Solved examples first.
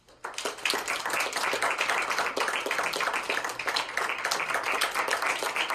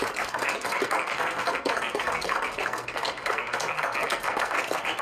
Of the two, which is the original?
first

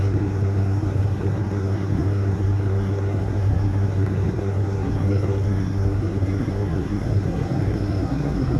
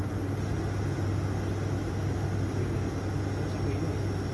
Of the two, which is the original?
second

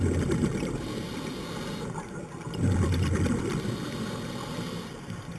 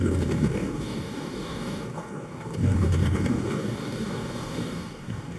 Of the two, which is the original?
first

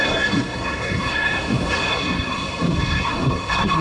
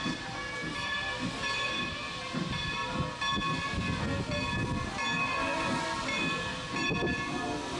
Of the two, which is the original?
second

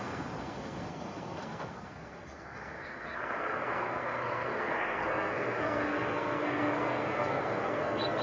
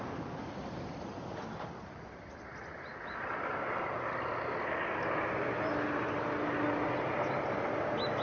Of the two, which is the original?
second